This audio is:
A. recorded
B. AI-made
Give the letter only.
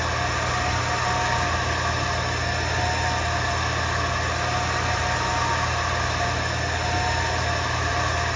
A